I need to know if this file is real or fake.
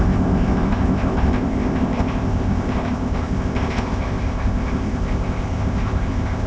fake